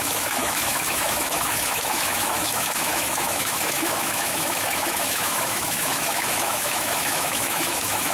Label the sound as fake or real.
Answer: fake